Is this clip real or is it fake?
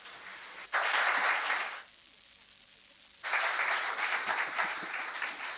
real